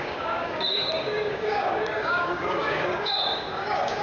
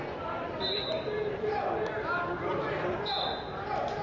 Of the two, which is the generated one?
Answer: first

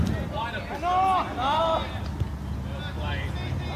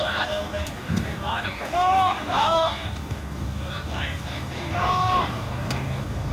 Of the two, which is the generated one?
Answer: second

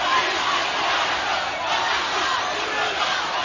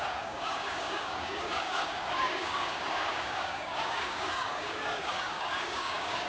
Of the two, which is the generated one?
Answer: second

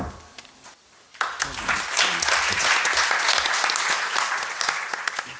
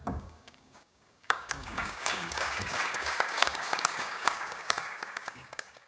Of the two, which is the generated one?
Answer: second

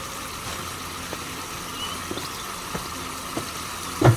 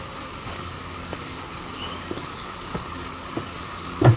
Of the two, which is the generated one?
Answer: second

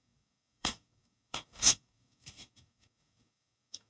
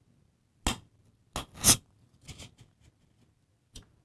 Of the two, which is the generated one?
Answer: first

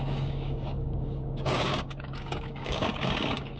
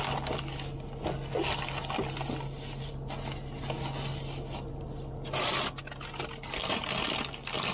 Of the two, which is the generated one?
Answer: first